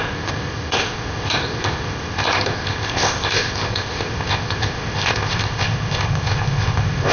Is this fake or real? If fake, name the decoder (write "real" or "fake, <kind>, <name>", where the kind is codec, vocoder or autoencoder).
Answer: fake, codec, ZipCodec